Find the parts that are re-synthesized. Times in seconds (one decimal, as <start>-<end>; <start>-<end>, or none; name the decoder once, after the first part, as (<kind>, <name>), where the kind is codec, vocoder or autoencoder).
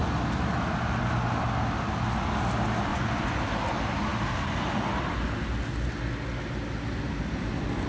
2.9-3.4 (vocoder, Vocos)